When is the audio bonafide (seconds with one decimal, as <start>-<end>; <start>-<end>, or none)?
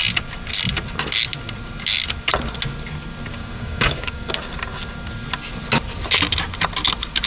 0.0-3.3; 4.3-7.3